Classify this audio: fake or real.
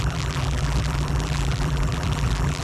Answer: fake